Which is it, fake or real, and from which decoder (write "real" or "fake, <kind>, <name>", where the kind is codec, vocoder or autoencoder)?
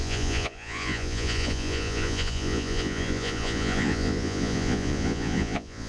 fake, vocoder, Vocos